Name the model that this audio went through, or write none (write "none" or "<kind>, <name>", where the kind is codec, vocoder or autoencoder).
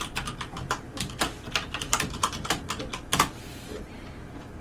vocoder, BigVGAN v2